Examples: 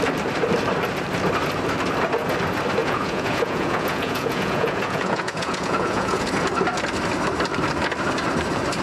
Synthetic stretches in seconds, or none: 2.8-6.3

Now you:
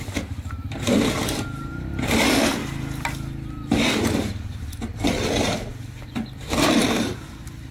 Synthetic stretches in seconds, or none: 0.0-1.2; 1.9-6.8; 7.3-7.7

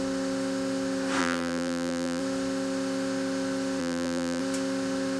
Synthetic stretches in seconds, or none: 1.2-2.2; 3.8-4.4

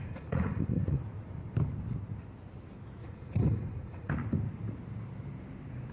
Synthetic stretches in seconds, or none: 0.0-1.0; 3.0-4.1

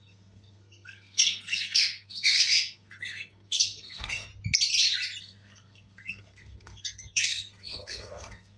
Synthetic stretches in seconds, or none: 0.0-4.3; 5.2-8.6

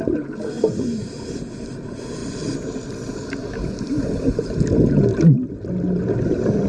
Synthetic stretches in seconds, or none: none

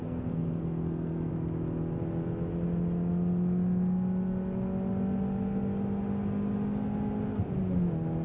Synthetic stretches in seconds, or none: 0.0-1.3

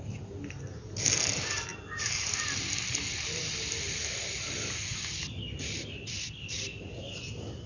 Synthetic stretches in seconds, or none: none